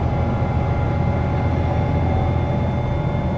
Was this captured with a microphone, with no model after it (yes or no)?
yes